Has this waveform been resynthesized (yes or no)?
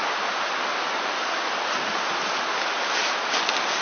no